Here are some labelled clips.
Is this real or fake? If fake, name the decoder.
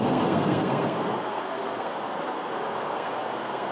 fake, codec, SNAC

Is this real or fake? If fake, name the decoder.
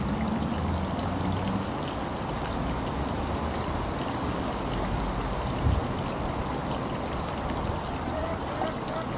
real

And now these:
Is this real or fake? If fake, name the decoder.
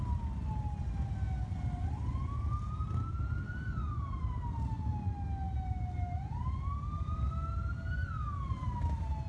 real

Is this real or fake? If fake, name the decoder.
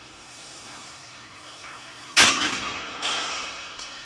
fake, codec, SNAC